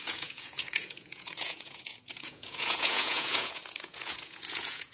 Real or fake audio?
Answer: fake